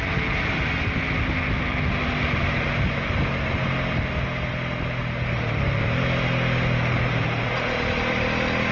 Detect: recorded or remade recorded